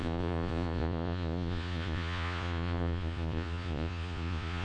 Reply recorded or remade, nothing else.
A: remade